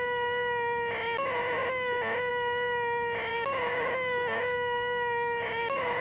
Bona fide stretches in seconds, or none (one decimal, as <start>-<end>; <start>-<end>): 0.0-3.3